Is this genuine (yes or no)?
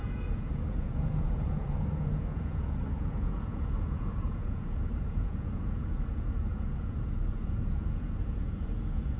no